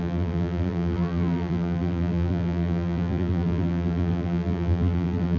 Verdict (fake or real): fake